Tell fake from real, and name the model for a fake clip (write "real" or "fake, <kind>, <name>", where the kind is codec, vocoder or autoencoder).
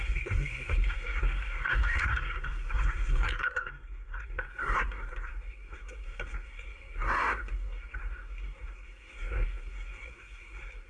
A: fake, codec, SNAC